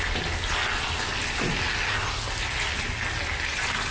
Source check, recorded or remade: recorded